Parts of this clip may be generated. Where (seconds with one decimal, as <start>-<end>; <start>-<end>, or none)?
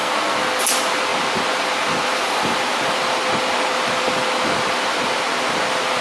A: 0.0-0.6